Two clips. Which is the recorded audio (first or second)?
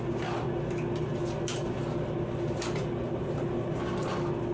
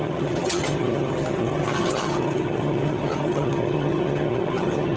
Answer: first